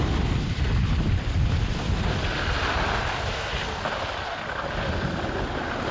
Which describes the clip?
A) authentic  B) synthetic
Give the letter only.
A